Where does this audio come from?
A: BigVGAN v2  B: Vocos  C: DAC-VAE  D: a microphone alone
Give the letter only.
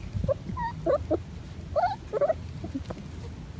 D